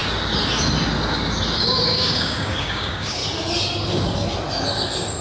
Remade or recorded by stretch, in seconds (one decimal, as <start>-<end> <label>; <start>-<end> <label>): 0.0-1.6 recorded; 1.6-3.2 remade; 3.2-5.2 recorded